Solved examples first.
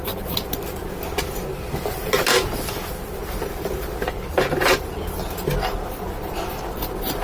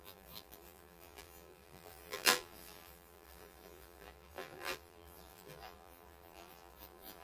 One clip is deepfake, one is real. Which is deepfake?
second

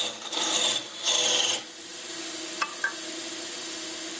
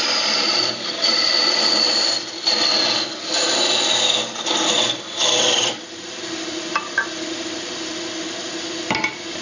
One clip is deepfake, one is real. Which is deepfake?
second